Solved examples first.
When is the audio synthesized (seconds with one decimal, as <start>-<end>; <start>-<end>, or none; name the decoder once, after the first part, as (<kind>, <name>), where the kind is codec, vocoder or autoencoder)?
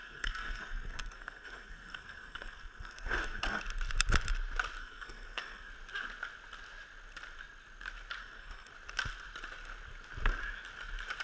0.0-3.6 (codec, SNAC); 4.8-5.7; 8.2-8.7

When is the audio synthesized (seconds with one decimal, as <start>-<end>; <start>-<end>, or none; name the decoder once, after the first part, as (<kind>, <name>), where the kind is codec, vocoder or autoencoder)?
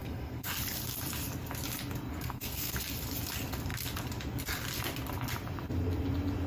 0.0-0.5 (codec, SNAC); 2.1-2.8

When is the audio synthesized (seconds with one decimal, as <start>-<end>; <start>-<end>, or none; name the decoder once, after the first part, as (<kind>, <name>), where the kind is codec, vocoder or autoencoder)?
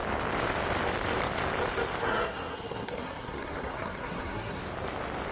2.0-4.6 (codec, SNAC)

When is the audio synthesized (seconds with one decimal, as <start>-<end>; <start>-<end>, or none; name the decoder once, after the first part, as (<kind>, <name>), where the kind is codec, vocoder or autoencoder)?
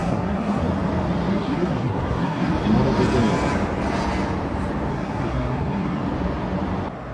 0.0-0.6 (codec, SNAC); 1.3-2.5; 4.9-6.0